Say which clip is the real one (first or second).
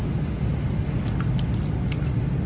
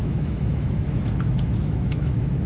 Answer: first